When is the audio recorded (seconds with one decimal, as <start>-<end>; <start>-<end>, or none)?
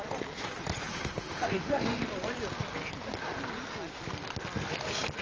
0.0-0.9; 2.0-5.2